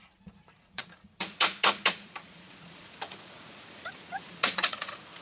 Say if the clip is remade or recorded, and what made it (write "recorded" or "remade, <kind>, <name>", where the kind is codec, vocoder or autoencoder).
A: remade, vocoder, Vocos